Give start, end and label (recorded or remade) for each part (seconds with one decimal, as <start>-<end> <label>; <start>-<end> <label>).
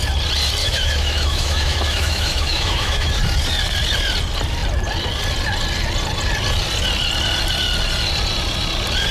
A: 0.0-0.6 recorded; 0.6-3.1 remade; 3.1-9.1 recorded